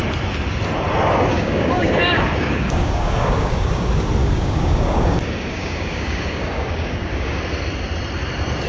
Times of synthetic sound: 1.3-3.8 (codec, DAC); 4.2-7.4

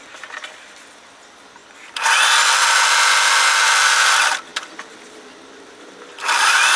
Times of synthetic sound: 0.0-1.6 (vocoder, BigVGAN v2); 3.9-6.8

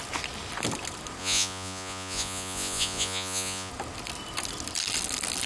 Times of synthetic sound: 1.2-3.7 (vocoder, Vocos)

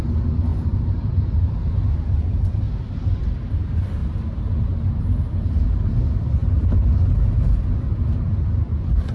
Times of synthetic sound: none